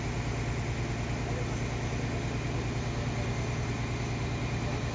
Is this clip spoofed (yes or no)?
no